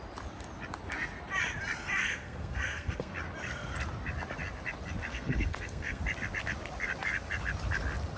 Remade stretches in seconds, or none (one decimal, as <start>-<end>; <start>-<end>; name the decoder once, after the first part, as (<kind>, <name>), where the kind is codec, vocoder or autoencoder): 2.0-3.1 (codec, SNAC); 5.1-6.0